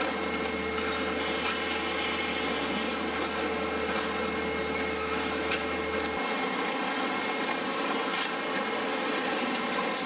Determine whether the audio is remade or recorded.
recorded